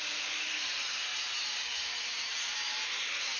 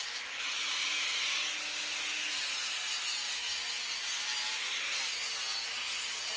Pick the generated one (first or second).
first